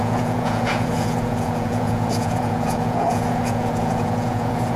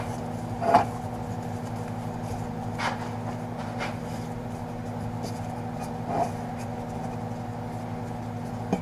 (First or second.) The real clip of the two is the second